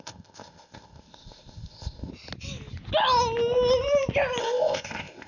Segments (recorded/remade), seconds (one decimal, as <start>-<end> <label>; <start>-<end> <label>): 0.0-2.1 remade; 2.1-4.4 recorded; 4.4-5.3 remade